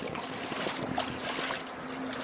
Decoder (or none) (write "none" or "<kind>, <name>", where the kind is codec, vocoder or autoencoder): none